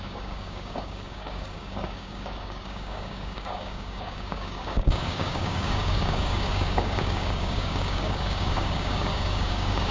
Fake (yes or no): yes